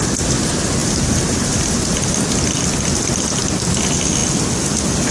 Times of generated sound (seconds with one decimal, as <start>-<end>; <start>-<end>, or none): 0.8-2.1